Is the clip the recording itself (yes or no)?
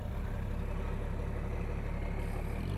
yes